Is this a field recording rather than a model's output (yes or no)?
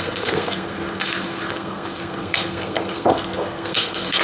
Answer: no